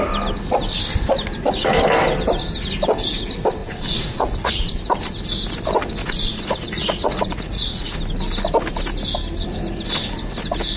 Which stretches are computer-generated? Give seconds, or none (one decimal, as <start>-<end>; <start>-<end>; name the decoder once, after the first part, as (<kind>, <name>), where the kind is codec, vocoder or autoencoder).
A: 3.6-4.7 (vocoder, Vocos); 6.0-8.0